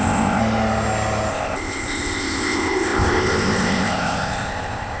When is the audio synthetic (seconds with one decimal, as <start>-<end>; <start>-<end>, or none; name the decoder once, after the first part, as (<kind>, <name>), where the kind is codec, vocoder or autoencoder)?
0.0-0.4 (codec, ZipCodec); 1.3-5.0